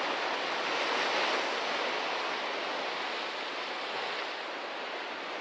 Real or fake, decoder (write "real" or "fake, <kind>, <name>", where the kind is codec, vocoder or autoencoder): real